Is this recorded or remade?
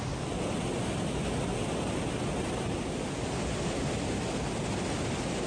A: recorded